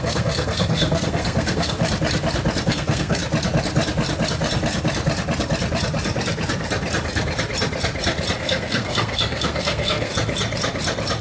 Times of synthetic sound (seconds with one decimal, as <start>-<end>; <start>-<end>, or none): 0.0-1.8; 2.7-3.2; 8.4-10.1